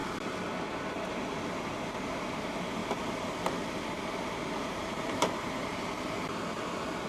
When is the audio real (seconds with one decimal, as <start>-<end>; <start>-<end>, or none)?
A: 0.0-2.8